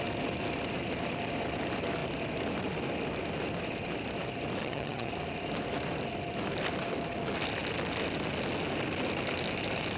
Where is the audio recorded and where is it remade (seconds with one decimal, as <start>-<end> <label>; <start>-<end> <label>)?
0.0-4.6 recorded; 4.6-5.1 remade; 5.1-10.0 recorded